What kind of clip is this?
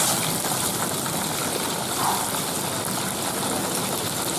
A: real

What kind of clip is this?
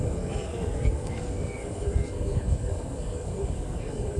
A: fake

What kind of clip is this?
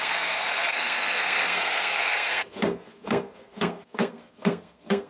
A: fake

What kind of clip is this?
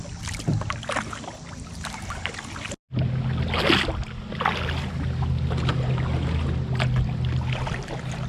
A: real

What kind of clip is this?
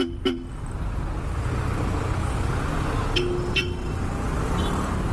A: real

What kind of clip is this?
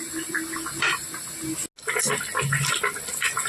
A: real